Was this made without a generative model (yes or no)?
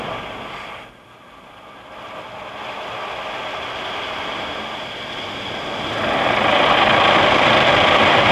yes